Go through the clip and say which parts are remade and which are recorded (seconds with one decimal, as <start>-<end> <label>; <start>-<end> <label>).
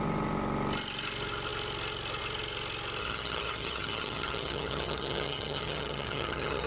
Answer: 0.0-3.0 recorded; 3.0-6.7 remade